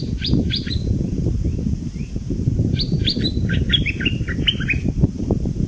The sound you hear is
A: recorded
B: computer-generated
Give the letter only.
B